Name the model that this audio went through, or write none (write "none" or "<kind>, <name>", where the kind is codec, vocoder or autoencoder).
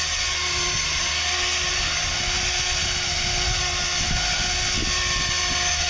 none